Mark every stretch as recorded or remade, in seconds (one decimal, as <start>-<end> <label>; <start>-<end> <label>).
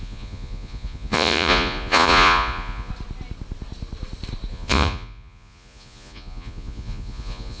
0.0-2.9 remade; 2.9-4.5 recorded; 4.5-7.6 remade